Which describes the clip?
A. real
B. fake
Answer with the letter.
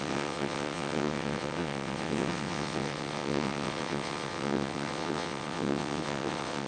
B